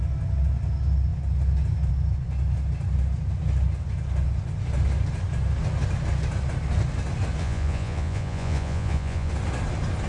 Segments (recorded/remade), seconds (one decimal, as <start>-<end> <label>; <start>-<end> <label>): 0.0-7.4 recorded; 7.4-9.3 remade; 9.3-10.1 recorded